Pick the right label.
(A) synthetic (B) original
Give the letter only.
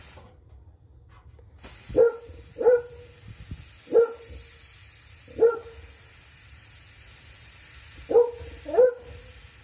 B